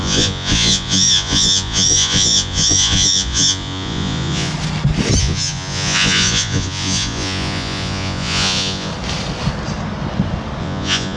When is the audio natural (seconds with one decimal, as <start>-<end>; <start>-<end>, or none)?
4.5-5.2; 8.9-10.6